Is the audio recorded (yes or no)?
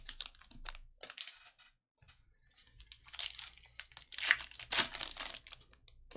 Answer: yes